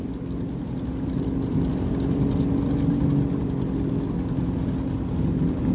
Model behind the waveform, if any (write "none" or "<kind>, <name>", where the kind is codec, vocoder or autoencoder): none